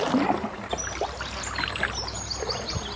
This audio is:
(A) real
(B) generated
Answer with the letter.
A